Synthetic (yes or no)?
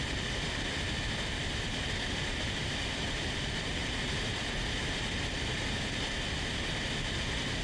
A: no